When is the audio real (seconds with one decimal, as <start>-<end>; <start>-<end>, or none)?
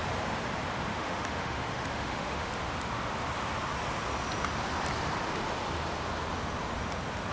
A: 0.0-0.9; 2.5-7.3